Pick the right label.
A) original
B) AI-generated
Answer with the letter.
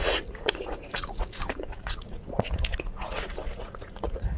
B